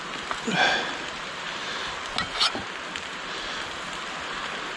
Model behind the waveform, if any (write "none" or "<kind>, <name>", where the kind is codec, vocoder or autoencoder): none